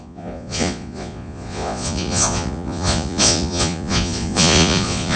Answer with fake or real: fake